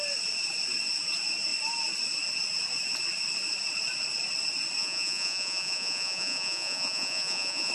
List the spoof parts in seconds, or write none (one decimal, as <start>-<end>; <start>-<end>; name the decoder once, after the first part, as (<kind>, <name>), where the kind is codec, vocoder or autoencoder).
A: 4.8-7.7 (vocoder, Vocos)